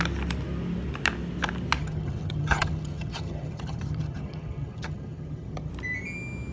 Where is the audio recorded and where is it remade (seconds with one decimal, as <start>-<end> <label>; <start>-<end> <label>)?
0.0-1.8 recorded; 1.8-5.7 remade; 5.7-6.5 recorded